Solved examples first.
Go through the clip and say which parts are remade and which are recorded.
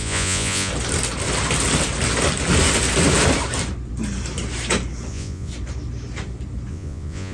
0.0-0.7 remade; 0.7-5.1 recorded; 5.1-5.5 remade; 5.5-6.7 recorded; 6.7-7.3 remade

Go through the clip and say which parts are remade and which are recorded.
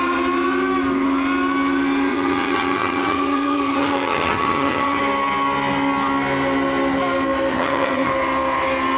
0.0-2.1 recorded; 2.1-5.0 remade; 5.0-7.5 recorded; 7.5-8.1 remade; 8.1-9.0 recorded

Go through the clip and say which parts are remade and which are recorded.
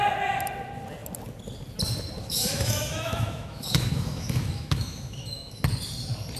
0.0-2.2 recorded; 2.2-5.6 remade; 5.6-6.4 recorded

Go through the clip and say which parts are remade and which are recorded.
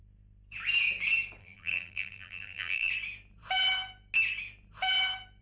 0.0-1.4 recorded; 1.4-2.9 remade; 2.9-5.4 recorded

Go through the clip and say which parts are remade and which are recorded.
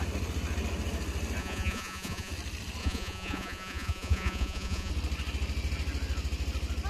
0.0-1.4 recorded; 1.4-2.3 remade; 2.3-2.8 recorded; 2.8-4.9 remade; 4.9-6.9 recorded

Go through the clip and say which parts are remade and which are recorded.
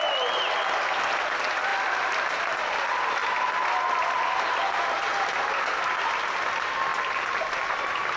0.0-8.2 recorded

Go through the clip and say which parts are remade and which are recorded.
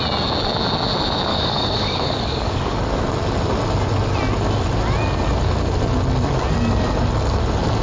0.0-1.3 recorded; 1.3-2.8 remade; 2.8-7.8 recorded